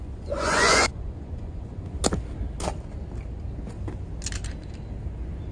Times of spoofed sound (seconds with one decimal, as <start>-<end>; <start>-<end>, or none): 0.0-2.0